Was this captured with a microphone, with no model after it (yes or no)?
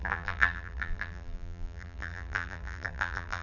no